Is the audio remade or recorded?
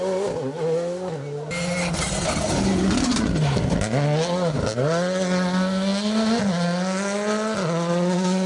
recorded